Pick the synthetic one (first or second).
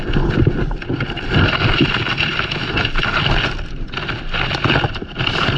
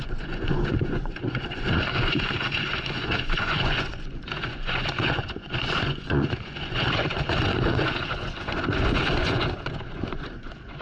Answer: second